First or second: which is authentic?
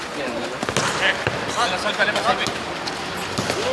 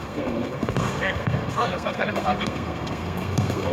first